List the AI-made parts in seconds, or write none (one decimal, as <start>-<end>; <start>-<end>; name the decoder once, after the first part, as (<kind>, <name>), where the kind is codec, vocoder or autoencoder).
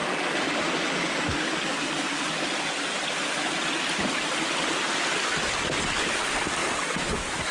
none